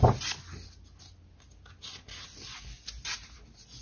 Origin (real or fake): real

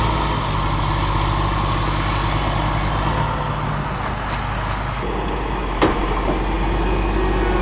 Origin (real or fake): real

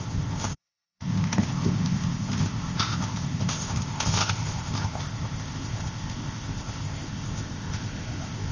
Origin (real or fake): fake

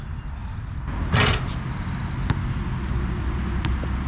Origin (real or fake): real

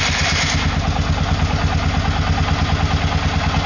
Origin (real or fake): real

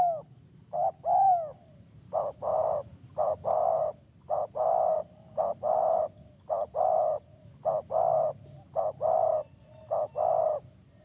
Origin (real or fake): real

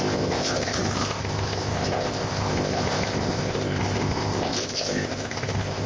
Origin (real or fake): fake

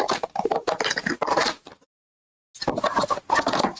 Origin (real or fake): real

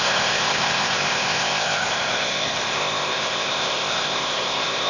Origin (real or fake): fake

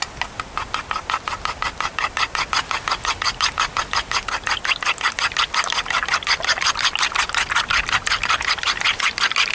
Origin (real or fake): real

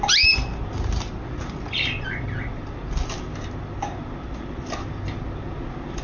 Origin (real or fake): real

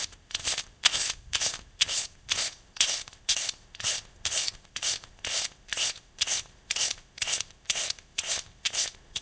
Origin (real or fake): fake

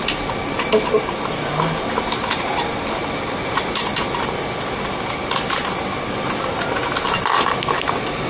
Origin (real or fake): real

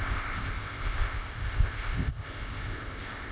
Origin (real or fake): fake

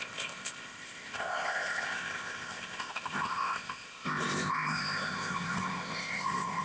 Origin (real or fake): fake